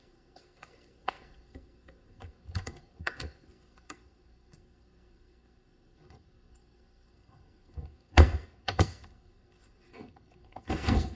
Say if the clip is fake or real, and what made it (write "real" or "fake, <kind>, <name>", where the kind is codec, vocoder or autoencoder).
fake, codec, SNAC